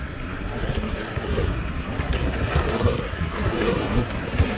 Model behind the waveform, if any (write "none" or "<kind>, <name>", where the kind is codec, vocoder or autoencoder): codec, SNAC